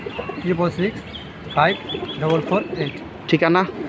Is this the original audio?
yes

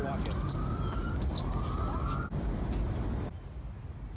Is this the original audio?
yes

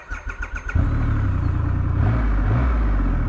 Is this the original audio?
yes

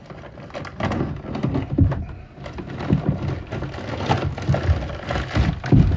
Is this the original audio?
yes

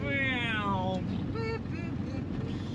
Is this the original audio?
yes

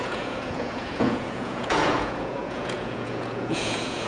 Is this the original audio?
no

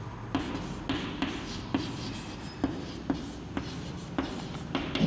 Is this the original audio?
yes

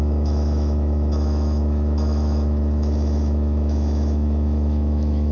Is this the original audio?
no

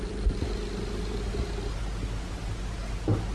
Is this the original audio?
yes